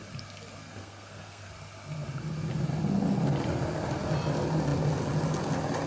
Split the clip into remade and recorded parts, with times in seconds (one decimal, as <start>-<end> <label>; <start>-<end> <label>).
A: 0.0-0.6 recorded; 0.6-1.5 remade; 1.5-5.9 recorded